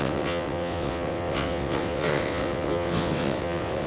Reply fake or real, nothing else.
fake